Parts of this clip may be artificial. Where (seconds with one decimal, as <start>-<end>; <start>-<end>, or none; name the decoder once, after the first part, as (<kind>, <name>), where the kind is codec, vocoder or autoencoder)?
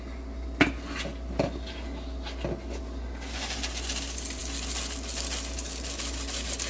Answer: none